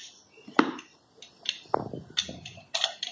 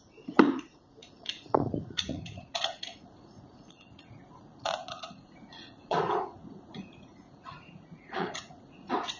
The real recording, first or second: first